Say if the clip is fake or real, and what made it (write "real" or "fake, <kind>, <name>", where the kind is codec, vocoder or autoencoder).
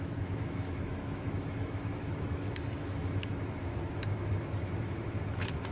fake, autoencoder, DAC-VAE